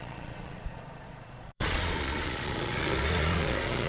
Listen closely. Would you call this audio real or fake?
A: fake